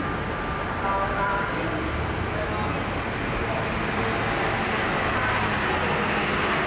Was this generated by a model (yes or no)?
no